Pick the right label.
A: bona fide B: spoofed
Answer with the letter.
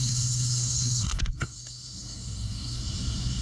B